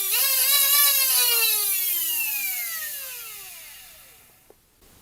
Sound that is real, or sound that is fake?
real